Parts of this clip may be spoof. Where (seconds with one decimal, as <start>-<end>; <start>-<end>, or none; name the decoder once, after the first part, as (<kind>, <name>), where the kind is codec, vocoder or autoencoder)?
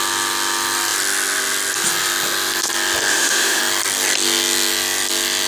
3.1-3.6 (autoencoder, DAC-VAE)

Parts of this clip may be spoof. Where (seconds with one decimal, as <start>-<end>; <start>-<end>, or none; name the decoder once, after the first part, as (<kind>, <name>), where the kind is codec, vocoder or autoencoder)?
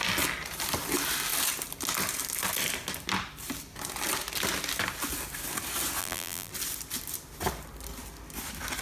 6.0-6.5 (vocoder, BigVGAN v2)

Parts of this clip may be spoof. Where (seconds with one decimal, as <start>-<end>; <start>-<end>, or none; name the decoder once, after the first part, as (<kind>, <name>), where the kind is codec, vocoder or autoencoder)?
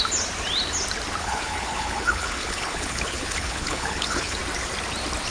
1.2-4.4 (codec, HILCodec)